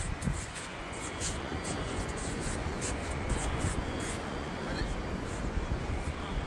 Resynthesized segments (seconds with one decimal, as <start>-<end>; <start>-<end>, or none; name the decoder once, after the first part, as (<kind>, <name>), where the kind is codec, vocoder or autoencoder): 0.0-4.8 (vocoder, Vocos); 5.4-6.5